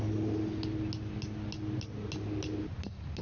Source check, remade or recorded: recorded